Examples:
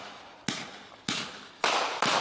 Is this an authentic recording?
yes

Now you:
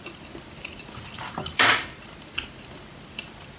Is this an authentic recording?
no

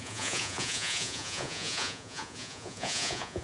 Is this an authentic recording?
no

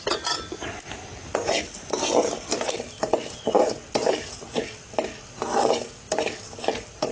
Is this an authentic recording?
yes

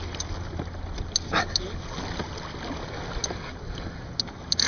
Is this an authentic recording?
yes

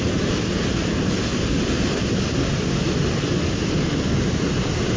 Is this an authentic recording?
yes